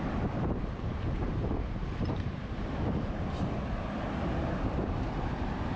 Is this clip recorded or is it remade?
remade